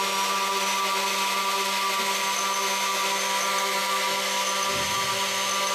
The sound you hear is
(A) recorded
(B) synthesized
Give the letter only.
A